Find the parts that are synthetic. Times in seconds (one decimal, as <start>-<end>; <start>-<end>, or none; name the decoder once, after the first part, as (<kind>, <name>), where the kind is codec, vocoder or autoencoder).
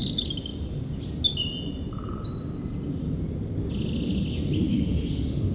4.7-5.5 (autoencoder, DAC-VAE)